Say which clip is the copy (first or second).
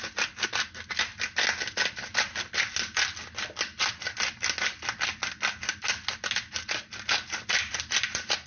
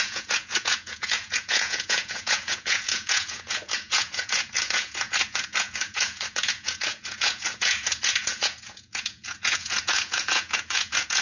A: second